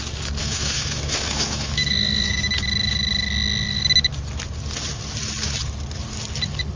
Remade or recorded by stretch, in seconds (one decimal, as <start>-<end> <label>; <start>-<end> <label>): 0.0-0.4 recorded; 0.4-2.5 remade; 2.5-6.8 recorded